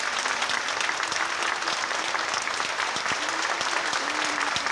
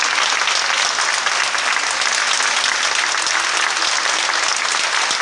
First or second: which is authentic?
second